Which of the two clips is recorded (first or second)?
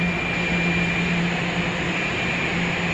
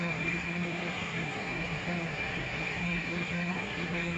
first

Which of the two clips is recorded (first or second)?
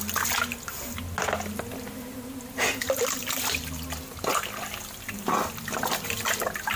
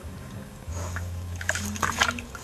first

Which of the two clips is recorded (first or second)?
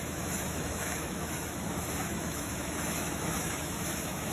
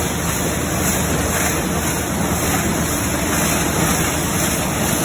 second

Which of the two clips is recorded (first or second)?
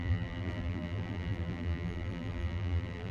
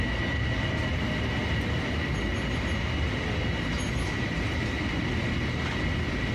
second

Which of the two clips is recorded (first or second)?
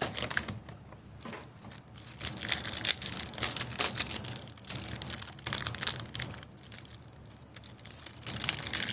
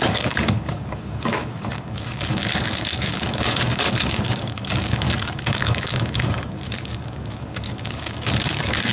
first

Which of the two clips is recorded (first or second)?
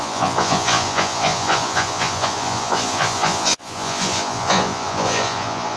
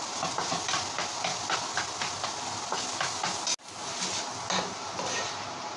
second